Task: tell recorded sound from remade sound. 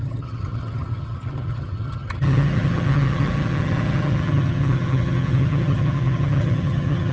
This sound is remade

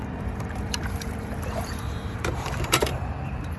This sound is remade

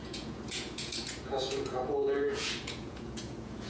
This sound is remade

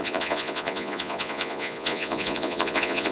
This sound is remade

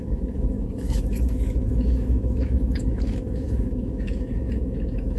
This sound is remade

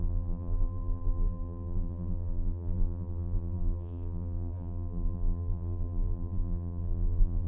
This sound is remade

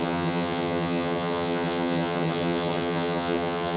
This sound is remade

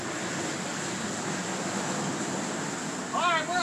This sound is recorded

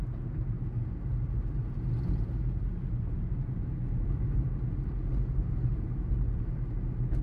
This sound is remade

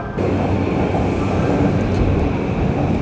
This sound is recorded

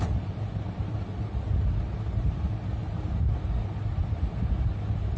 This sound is recorded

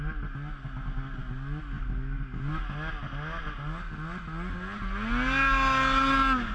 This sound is recorded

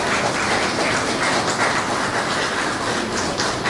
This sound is recorded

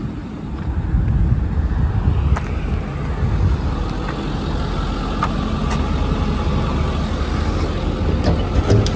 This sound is recorded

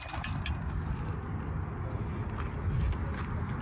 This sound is recorded